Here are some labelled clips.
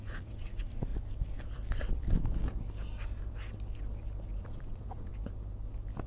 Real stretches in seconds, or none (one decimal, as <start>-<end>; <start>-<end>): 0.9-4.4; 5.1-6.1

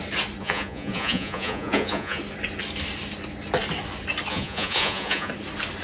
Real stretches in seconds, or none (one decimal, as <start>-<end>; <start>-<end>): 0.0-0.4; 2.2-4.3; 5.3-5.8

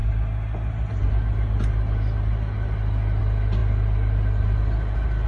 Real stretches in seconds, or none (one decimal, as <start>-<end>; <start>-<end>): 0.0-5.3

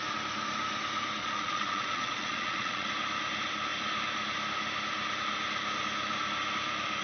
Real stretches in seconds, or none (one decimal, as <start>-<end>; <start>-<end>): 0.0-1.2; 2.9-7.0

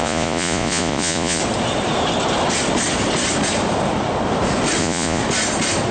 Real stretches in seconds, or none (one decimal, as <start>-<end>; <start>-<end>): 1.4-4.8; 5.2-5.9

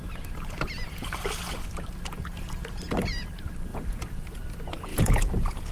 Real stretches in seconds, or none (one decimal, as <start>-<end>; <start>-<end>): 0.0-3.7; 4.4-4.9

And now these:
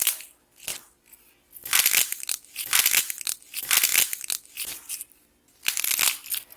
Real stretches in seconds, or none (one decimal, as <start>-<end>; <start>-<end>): 0.0-6.6